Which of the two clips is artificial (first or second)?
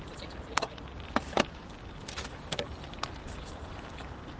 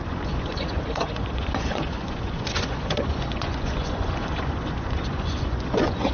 second